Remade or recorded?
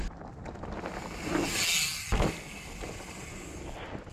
recorded